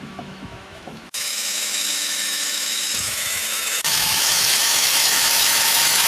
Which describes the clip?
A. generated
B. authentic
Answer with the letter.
A